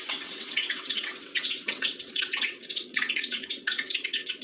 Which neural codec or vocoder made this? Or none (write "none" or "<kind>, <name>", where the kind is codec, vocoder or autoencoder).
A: vocoder, WaveNeXt